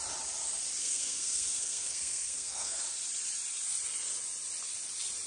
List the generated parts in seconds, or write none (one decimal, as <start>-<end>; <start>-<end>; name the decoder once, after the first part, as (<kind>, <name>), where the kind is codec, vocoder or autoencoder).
0.8-2.8 (codec, SNAC)